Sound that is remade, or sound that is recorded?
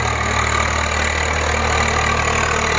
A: recorded